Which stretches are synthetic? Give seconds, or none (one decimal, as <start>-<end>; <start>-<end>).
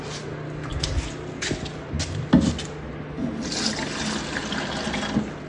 none